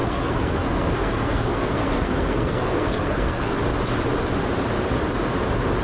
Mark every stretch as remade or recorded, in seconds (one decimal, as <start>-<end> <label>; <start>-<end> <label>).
0.0-3.5 remade; 3.5-5.8 recorded